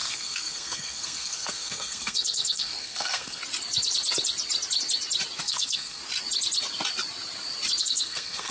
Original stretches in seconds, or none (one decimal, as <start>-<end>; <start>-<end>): 3.4-5.4; 6.0-7.8